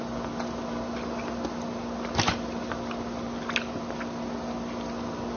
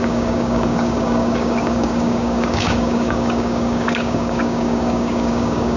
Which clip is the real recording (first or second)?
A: first